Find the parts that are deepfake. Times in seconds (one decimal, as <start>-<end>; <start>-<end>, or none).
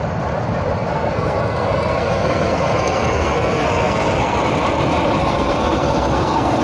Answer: 0.9-4.4; 5.2-6.6